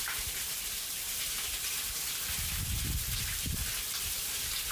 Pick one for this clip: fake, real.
fake